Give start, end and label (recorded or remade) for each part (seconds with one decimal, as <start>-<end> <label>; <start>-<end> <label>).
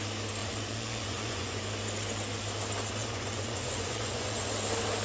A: 0.0-0.4 recorded; 0.4-1.6 remade; 1.6-3.0 recorded; 3.0-4.5 remade; 4.5-5.0 recorded